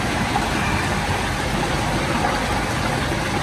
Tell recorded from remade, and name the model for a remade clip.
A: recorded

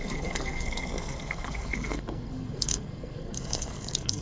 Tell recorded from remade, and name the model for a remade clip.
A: remade, codec, SNAC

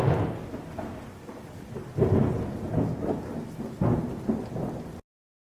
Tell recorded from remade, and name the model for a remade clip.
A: recorded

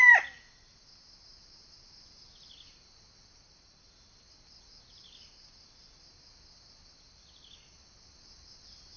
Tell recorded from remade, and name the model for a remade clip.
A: recorded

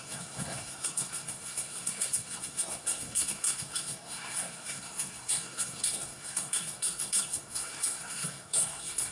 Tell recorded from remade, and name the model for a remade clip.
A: remade, codec, SNAC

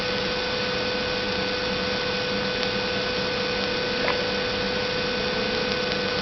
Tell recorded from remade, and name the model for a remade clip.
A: recorded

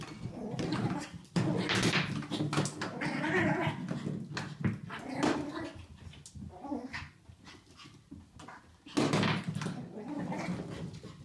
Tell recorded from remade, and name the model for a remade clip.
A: recorded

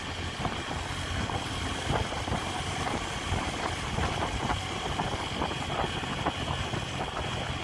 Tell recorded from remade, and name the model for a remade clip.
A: recorded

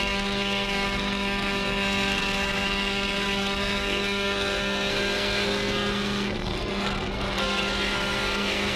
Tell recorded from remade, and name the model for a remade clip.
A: remade, codec, SNAC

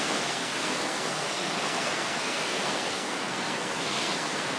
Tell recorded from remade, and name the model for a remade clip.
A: remade, codec, SNAC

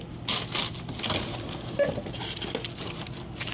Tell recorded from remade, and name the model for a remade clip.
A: recorded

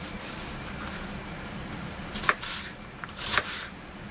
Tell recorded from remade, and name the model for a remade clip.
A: recorded